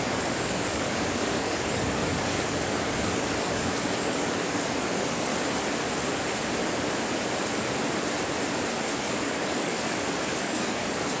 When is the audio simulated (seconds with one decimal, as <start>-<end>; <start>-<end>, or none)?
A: 0.0-5.3; 9.0-11.2